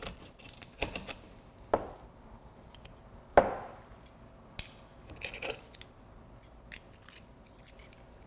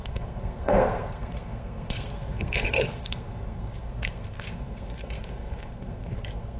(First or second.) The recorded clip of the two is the first